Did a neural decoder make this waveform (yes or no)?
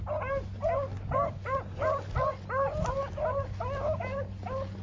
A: no